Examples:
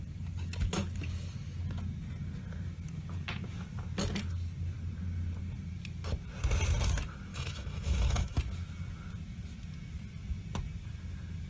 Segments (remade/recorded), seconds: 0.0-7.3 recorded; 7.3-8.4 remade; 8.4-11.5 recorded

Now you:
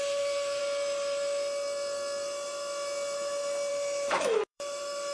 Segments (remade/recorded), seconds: 0.0-0.6 remade; 0.6-3.7 recorded; 3.7-5.1 remade